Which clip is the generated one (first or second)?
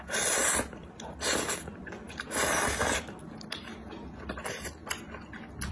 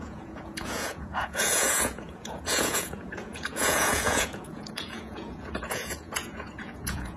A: second